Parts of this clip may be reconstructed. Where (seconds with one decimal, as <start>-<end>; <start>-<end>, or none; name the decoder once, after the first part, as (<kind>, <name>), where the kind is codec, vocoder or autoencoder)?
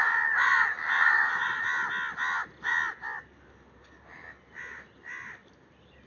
none